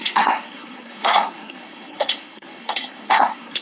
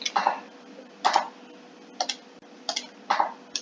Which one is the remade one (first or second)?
first